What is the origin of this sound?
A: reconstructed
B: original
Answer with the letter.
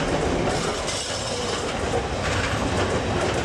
B